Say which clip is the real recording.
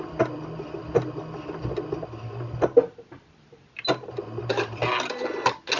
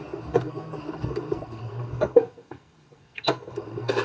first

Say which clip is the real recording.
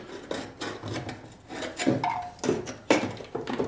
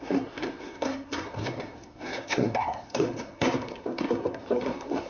first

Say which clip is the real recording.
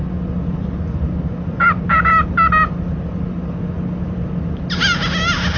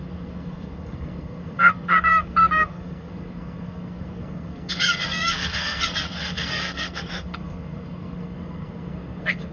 first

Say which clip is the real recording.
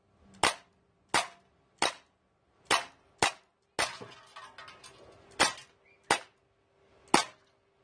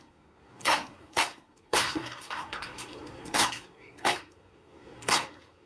first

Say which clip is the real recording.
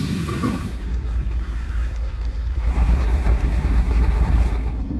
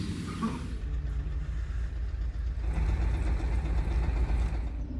second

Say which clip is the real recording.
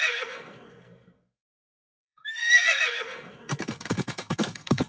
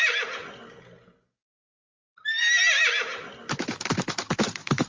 second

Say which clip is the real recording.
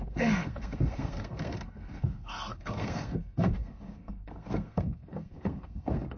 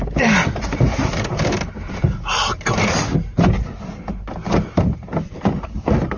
second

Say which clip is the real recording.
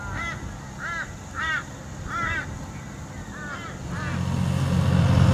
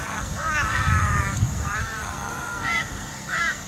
first